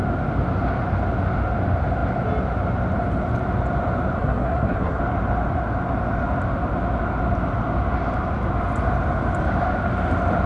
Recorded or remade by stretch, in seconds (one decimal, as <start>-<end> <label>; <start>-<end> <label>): 0.0-4.2 recorded; 4.2-5.0 remade; 5.0-10.5 recorded